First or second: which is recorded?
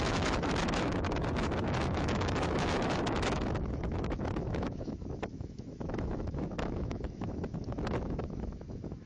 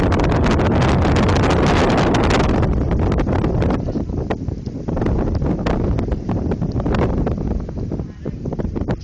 second